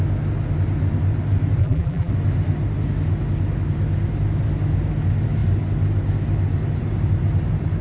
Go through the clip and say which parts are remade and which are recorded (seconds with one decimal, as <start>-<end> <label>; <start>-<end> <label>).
0.0-1.6 recorded; 1.6-2.1 remade; 2.1-7.8 recorded